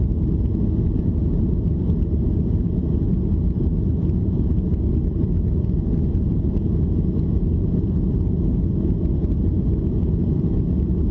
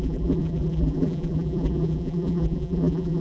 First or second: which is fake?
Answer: second